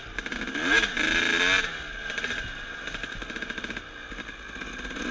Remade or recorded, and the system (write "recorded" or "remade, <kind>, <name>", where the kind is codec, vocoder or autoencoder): recorded